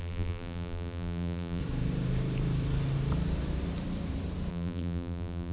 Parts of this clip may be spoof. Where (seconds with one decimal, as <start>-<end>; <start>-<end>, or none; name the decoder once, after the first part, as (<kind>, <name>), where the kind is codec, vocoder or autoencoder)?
0.0-1.6 (vocoder, BigVGAN v2); 4.5-5.5